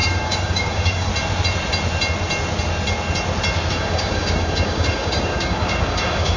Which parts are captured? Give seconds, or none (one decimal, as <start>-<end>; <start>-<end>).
1.1-3.7